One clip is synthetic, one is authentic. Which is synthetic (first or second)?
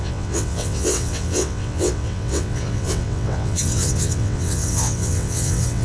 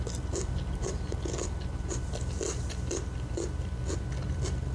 first